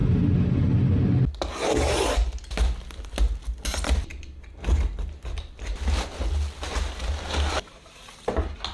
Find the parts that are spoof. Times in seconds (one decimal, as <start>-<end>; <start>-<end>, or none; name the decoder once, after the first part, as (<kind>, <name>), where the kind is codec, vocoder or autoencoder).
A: none